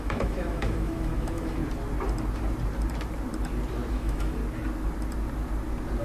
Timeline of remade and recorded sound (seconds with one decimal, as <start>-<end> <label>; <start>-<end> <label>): 0.0-1.6 remade; 1.6-3.9 recorded; 3.9-4.4 remade; 4.4-6.0 recorded